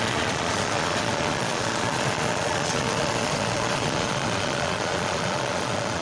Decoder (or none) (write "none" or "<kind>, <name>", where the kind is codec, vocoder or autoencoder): vocoder, Vocos